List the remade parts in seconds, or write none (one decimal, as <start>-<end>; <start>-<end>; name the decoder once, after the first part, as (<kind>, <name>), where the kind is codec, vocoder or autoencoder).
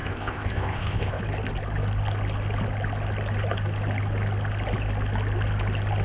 0.0-1.2 (codec, ZipCodec)